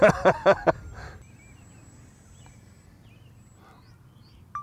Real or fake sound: real